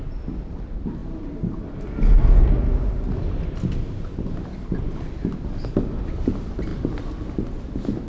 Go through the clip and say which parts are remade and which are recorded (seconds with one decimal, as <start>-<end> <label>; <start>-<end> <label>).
0.0-8.1 recorded